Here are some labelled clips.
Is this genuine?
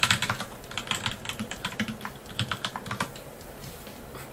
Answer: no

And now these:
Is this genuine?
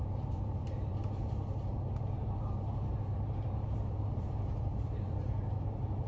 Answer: no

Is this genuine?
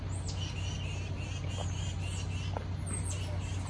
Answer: yes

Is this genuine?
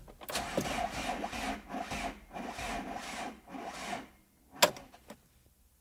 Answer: yes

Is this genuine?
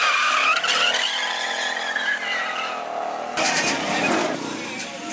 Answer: yes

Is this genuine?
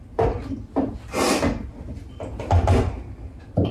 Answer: yes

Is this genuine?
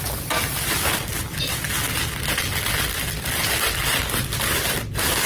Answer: yes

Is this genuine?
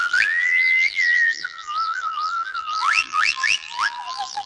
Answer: no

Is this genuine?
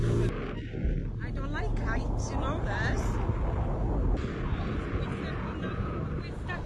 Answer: yes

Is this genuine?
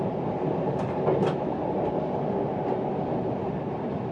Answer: yes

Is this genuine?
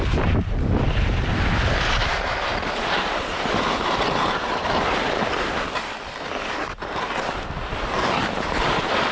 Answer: no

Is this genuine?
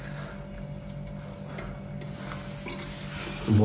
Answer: yes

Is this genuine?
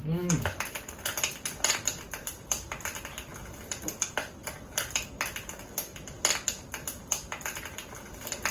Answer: yes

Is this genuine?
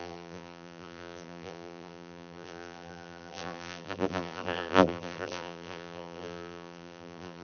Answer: no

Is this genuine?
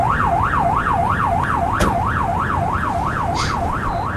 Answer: yes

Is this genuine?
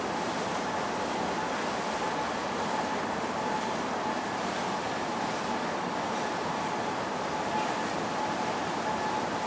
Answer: no